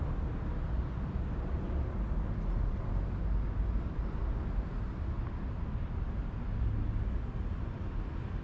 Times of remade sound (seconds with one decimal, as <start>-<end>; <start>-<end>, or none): none